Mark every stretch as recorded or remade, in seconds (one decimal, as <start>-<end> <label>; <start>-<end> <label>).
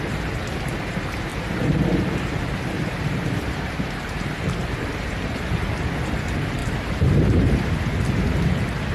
0.0-1.3 recorded; 1.3-5.2 remade; 5.2-6.6 recorded; 6.6-7.7 remade; 7.7-8.9 recorded